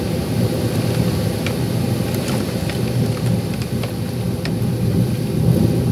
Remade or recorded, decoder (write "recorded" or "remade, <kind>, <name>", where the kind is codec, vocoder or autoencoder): recorded